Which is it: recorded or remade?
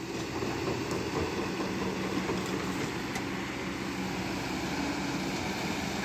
recorded